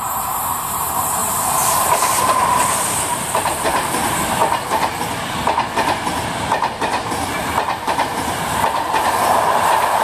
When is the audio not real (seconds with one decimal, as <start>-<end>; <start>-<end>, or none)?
0.0-4.4; 6.3-10.0